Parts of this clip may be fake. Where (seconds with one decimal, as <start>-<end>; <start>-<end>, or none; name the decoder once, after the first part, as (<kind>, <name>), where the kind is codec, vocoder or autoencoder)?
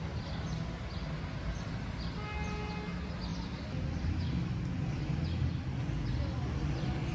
none